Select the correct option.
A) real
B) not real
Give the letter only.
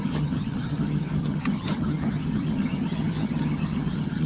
B